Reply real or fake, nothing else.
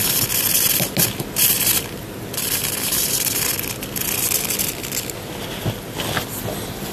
real